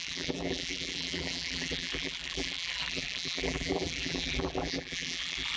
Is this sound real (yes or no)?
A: no